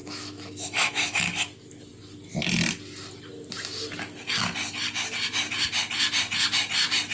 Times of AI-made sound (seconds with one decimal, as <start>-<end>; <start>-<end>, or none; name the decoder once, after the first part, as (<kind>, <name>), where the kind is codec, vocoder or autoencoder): 0.0-1.2 (autoencoder, DAC-VAE)